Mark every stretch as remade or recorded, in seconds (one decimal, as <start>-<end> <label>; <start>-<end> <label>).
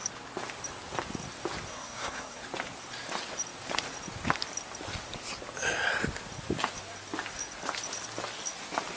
0.0-1.7 recorded; 1.7-2.4 remade; 2.4-9.0 recorded